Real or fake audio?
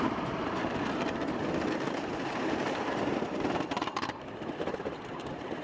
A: fake